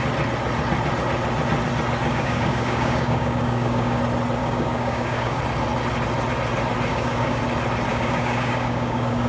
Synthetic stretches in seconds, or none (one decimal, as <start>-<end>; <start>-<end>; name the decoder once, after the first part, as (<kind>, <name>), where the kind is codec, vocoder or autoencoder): 2.1-4.0 (codec, DAC); 4.4-5.4; 6.9-7.4; 7.9-9.3